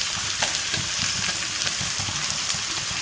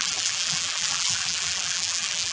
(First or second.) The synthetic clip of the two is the second